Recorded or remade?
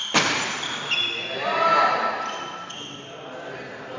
recorded